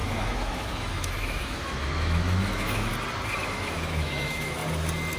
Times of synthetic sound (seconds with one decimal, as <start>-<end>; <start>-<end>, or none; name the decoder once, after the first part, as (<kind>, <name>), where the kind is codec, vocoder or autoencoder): 0.0-2.9 (autoencoder, DAC-VAE); 3.4-4.6